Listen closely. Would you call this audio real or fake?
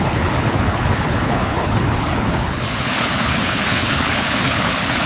fake